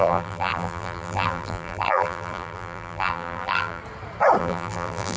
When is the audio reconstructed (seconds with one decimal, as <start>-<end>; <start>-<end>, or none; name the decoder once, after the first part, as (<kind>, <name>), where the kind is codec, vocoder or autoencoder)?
0.0-3.8 (vocoder, BigVGAN v2); 4.4-5.2